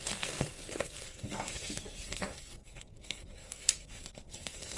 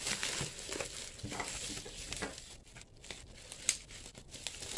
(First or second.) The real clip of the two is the second